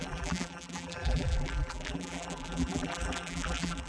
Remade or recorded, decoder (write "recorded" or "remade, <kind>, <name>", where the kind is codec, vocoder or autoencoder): remade, vocoder, BigVGAN v2